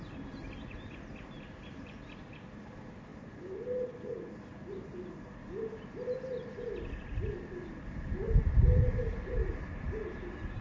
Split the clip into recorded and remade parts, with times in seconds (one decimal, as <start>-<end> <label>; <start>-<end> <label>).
0.0-10.6 recorded